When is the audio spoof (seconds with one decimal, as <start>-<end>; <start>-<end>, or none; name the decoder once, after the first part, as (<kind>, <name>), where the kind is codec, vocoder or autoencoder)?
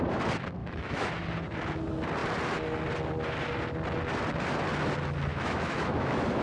0.6-1.1 (autoencoder, DAC-VAE); 5.3-6.4